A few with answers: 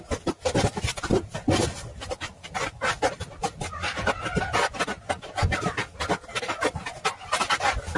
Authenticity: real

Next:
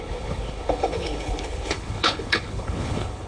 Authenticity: fake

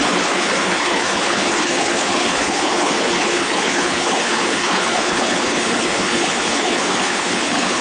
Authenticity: fake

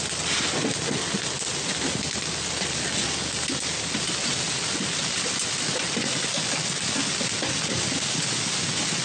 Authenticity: real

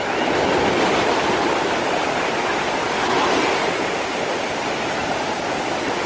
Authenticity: real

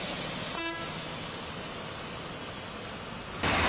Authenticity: real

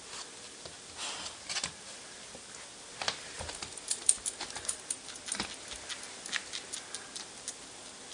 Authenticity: real